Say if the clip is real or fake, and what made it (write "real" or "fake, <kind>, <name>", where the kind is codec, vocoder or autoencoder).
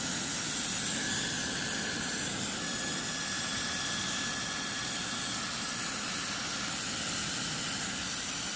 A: real